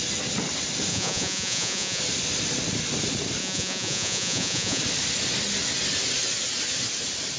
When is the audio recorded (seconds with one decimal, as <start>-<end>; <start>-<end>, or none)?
0.0-0.9; 2.0-3.4; 4.8-7.4

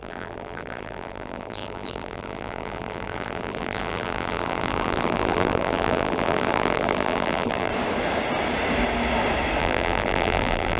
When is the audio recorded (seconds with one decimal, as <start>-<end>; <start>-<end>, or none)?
7.7-9.6

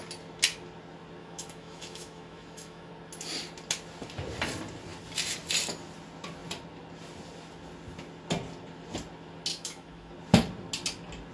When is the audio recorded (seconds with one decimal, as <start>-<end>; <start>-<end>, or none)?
0.0-1.2; 2.9-9.5; 10.1-11.3